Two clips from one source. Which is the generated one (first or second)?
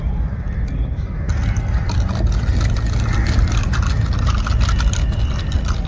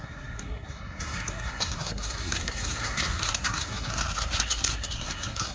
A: second